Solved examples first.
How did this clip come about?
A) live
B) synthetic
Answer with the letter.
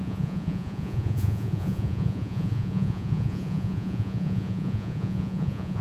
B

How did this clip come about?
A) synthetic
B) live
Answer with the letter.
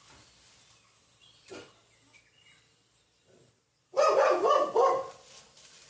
B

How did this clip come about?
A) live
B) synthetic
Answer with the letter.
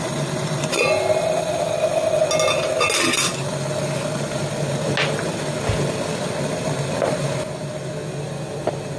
A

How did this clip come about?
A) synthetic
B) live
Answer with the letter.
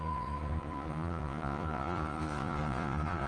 A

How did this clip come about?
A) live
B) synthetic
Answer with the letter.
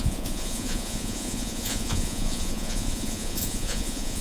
B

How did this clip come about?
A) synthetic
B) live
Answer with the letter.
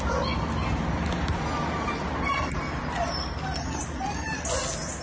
B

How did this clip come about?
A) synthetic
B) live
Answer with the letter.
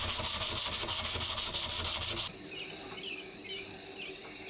B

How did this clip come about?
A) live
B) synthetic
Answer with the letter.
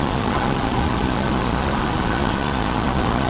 B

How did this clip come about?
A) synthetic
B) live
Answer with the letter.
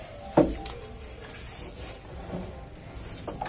B